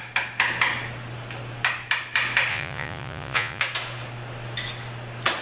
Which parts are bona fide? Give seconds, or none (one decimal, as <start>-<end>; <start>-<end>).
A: 0.0-2.5; 3.6-5.4